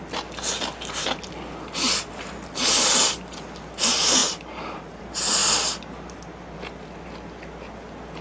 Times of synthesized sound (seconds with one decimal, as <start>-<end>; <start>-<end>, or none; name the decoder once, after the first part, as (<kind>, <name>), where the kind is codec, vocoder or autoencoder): none